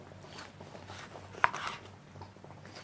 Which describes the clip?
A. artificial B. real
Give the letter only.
B